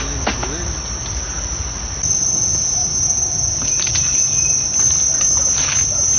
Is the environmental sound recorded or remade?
recorded